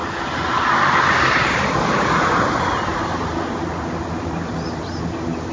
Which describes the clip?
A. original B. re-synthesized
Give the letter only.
B